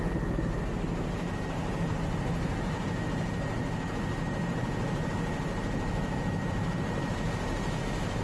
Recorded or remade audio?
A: remade